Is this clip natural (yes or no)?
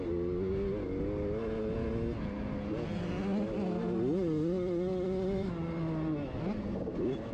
yes